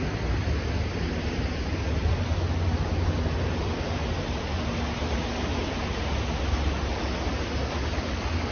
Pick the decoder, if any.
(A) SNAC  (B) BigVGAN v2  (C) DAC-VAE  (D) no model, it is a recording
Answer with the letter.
D